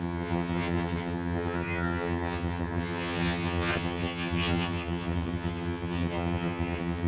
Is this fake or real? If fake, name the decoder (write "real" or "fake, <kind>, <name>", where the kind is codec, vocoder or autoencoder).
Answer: fake, vocoder, HiFi-GAN